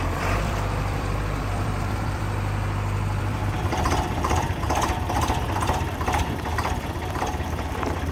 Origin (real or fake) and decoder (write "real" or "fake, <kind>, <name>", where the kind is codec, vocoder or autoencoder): fake, vocoder, BigVGAN v2